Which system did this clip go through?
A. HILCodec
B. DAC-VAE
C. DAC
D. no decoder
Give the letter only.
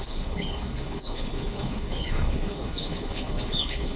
A